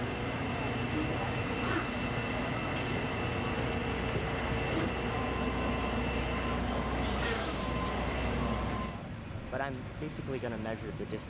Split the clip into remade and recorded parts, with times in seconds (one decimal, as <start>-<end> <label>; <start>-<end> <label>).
0.0-11.3 recorded

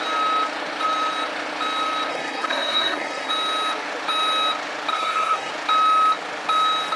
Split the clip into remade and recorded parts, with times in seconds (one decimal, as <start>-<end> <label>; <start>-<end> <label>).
0.0-2.1 recorded; 2.1-3.3 remade; 3.3-4.9 recorded; 4.9-5.5 remade; 5.5-7.0 recorded

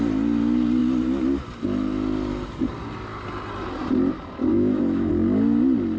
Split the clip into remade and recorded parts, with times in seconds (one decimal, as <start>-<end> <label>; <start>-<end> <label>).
0.0-4.5 recorded; 4.5-5.1 remade; 5.1-6.0 recorded

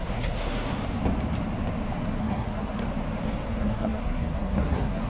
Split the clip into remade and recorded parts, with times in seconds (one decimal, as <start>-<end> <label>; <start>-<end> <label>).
0.0-0.7 remade; 0.7-2.2 recorded; 2.2-2.8 remade; 2.8-3.5 recorded; 3.5-5.1 remade

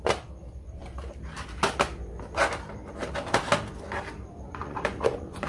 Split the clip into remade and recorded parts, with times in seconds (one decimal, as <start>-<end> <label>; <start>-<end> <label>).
0.0-4.6 recorded; 4.6-5.5 remade

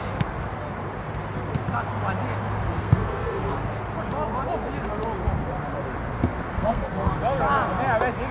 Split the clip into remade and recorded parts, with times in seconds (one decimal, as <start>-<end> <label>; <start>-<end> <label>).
0.0-2.8 recorded; 2.8-3.4 remade; 3.4-6.5 recorded; 6.5-7.1 remade; 7.1-8.3 recorded

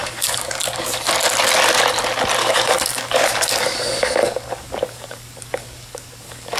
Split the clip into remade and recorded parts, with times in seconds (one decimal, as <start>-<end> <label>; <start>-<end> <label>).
0.0-1.0 remade; 1.0-2.4 recorded; 2.4-6.6 remade

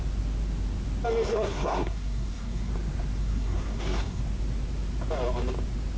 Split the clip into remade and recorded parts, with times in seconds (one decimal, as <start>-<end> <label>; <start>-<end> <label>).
0.0-1.3 recorded; 1.3-2.7 remade; 2.7-3.2 recorded; 3.2-4.2 remade; 4.2-6.0 recorded